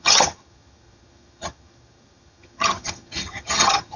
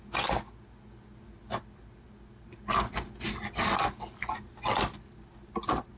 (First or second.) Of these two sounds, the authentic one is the second